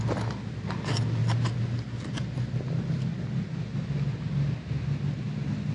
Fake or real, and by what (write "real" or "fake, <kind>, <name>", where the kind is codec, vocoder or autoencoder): real